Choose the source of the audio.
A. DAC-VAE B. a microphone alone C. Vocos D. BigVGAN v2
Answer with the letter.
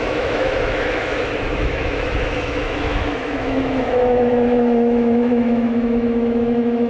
A